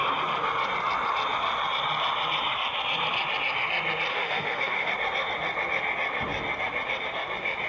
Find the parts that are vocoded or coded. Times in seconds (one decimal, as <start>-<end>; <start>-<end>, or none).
4.1-4.9